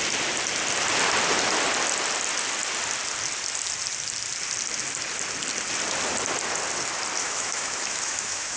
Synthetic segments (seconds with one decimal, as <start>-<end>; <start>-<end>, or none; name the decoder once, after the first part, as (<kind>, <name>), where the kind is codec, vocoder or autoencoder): 7.2-8.6 (autoencoder, DAC-VAE)